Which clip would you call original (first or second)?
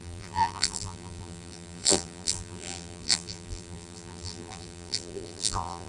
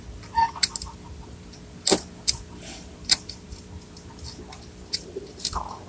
second